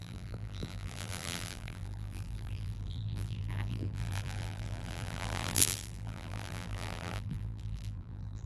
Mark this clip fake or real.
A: fake